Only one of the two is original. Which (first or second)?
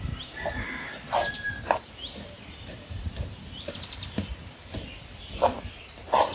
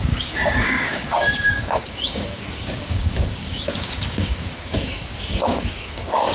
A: first